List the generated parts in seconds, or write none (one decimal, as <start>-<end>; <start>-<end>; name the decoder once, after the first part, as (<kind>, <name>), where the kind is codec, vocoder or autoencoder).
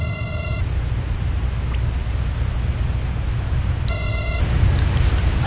0.0-0.6 (codec, ZipCodec); 3.9-4.4